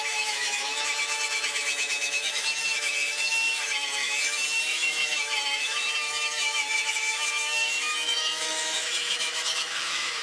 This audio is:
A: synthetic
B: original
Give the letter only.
A